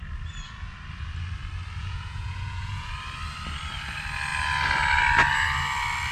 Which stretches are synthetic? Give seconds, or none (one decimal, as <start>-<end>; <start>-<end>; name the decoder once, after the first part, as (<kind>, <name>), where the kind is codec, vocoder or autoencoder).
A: 1.8-2.9 (vocoder, Vocos)